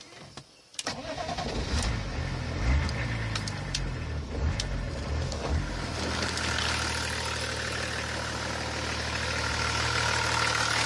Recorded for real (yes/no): yes